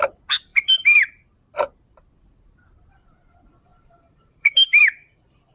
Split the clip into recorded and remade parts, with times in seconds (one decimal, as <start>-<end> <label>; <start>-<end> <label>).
0.0-0.5 recorded; 0.5-1.1 remade; 1.1-3.7 recorded; 3.7-4.8 remade; 4.8-5.5 recorded